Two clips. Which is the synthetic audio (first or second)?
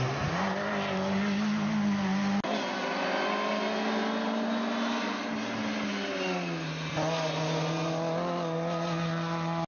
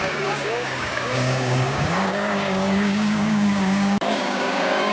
second